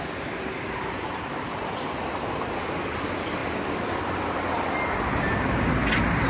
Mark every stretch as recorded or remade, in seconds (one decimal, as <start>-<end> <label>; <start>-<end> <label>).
0.0-6.3 recorded